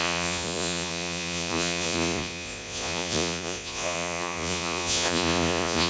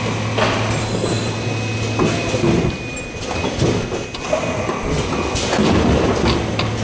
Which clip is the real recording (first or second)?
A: second